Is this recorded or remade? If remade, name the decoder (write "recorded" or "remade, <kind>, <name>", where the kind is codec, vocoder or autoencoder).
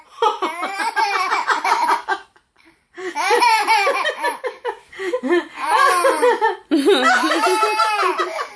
remade, vocoder, BigVGAN v2